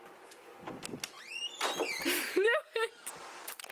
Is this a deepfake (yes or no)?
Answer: no